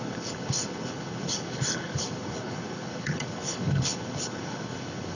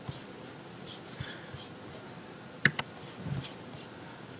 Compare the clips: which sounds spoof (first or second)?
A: first